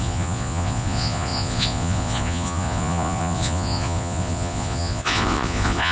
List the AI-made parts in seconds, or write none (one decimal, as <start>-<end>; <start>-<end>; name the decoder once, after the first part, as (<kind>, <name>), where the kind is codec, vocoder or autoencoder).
0.0-5.9 (vocoder, Vocos)